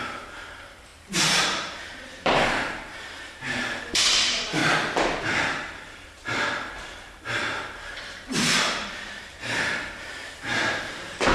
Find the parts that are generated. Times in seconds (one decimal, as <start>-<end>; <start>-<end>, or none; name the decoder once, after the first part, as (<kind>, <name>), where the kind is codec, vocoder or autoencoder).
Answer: 0.0-4.6 (vocoder, BigVGAN v2); 5.2-11.3